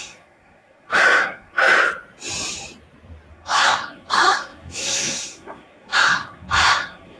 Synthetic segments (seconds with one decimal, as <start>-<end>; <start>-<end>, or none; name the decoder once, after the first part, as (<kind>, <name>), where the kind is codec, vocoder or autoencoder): 0.0-1.6 (codec, SNAC); 3.3-7.2